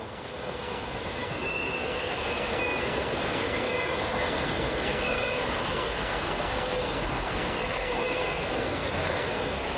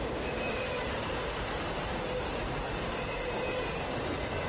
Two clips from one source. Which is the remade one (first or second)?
first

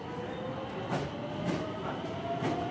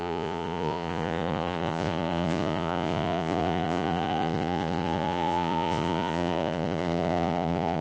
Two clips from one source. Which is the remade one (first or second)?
second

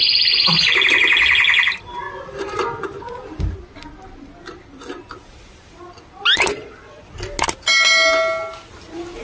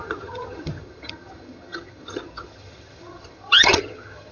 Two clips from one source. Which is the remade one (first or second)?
second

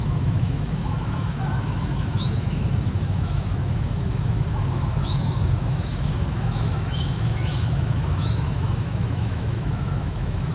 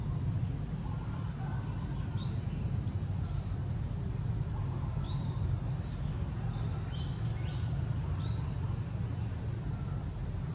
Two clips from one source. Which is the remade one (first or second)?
first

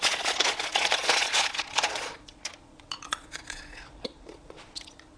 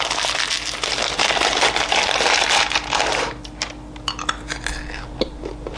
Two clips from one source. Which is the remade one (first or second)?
first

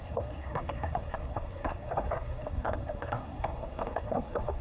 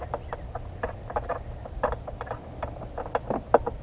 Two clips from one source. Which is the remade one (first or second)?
first